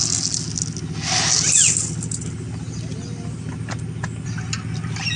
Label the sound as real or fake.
real